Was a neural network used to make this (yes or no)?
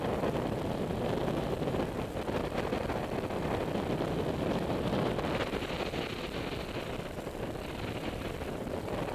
no